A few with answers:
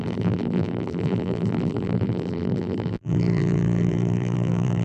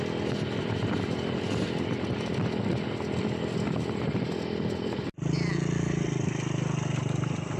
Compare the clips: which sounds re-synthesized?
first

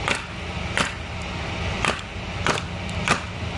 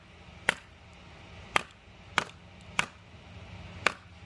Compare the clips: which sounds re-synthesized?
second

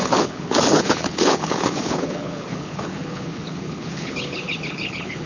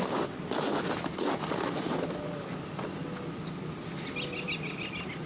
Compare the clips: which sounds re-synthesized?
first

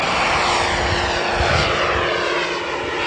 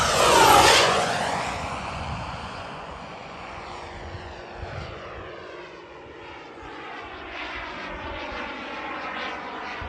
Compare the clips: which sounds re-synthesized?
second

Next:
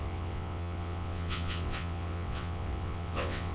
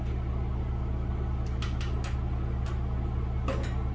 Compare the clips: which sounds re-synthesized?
first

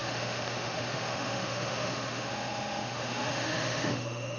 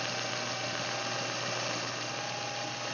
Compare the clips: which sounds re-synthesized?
first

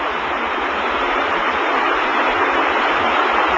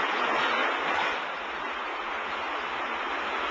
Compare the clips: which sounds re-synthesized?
first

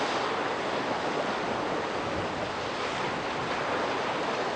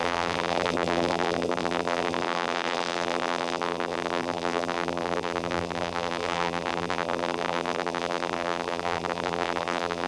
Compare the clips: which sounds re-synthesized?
second